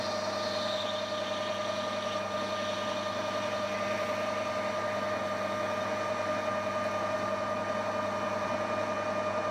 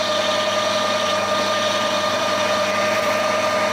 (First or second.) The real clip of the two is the first